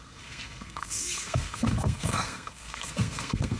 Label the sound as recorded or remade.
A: remade